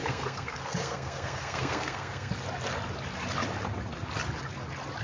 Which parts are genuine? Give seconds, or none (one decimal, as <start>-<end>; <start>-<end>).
2.3-5.0